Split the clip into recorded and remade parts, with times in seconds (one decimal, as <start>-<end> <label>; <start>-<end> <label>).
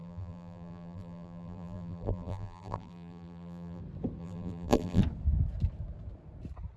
0.0-3.8 remade; 3.8-4.2 recorded; 4.2-5.0 remade; 5.0-6.8 recorded